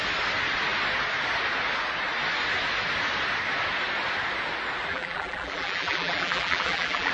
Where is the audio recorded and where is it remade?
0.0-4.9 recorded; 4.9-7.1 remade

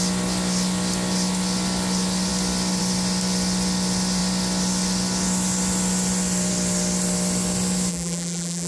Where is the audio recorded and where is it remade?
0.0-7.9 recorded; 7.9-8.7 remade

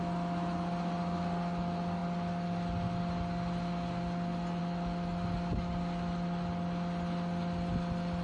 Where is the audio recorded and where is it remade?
0.0-8.2 recorded

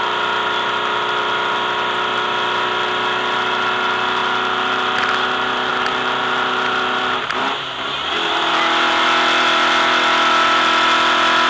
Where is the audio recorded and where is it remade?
0.0-11.5 recorded

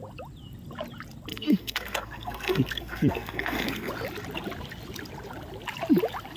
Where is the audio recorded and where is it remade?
0.0-1.3 recorded; 1.3-3.9 remade; 3.9-6.4 recorded

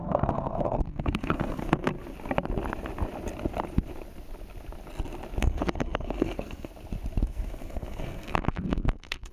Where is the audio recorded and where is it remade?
0.0-1.9 remade; 1.9-5.4 recorded; 5.4-6.7 remade; 6.7-7.2 recorded; 7.2-9.3 remade

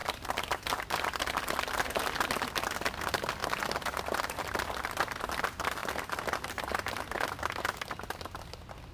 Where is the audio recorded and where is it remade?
0.0-5.8 recorded; 5.8-6.7 remade; 6.7-8.9 recorded

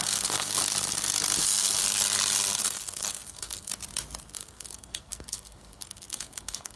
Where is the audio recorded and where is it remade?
0.0-0.6 remade; 0.6-1.4 recorded; 1.4-1.8 remade; 1.8-2.6 recorded; 2.6-3.7 remade; 3.7-4.2 recorded; 4.2-6.8 remade